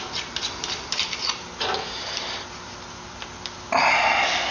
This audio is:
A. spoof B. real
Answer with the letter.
B